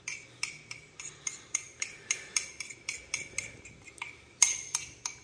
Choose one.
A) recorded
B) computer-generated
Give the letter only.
A